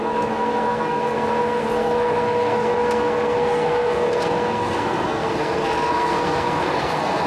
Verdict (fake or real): fake